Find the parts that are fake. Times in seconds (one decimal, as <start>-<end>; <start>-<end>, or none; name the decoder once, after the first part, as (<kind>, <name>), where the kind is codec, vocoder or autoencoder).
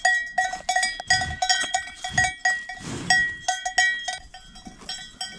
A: 1.5-2.0 (vocoder, Vocos)